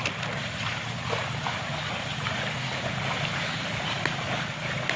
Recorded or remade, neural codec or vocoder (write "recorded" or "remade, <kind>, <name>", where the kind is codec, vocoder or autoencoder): recorded